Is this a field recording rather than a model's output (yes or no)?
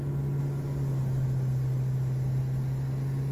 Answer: yes